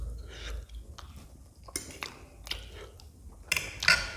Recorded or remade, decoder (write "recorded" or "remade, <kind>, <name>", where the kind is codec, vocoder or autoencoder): recorded